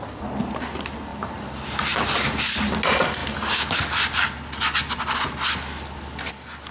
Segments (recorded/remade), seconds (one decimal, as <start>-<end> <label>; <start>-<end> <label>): 0.0-1.1 recorded; 1.1-2.7 remade; 2.7-6.7 recorded